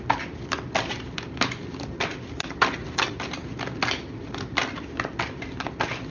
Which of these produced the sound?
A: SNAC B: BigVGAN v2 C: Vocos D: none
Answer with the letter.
D